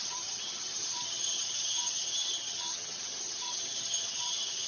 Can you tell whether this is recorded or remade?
remade